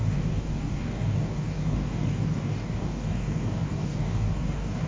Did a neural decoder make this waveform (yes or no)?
yes